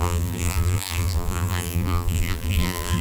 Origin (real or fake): fake